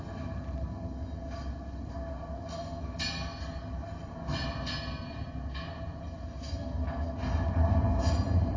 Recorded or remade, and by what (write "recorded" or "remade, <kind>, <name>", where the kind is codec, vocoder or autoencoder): recorded